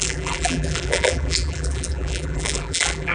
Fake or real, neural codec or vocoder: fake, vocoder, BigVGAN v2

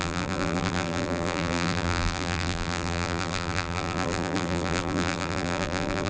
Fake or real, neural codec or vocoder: fake, vocoder, BigVGAN v2